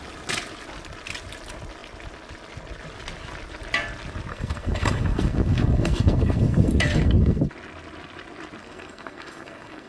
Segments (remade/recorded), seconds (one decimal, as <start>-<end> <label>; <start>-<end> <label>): 0.0-4.3 recorded; 4.3-7.5 remade; 7.5-8.6 recorded; 8.6-9.9 remade